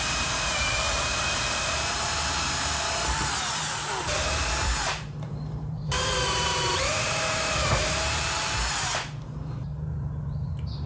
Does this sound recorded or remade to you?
remade